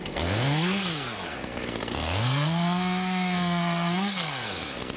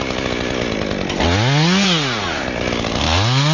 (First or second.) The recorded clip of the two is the second